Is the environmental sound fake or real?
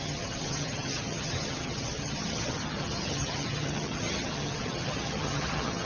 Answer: fake